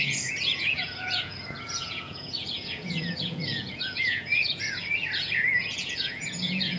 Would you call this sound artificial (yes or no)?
yes